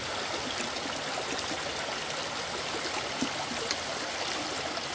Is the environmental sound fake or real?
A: real